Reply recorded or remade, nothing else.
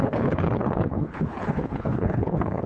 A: remade